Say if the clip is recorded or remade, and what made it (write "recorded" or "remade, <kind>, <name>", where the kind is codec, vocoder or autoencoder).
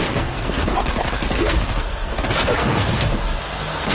remade, codec, SNAC